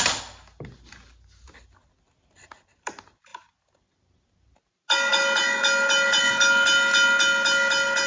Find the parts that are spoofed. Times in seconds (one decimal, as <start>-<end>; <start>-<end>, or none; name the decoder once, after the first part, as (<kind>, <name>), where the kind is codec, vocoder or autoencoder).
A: none